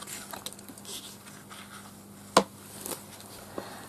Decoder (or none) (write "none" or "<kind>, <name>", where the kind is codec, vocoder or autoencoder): none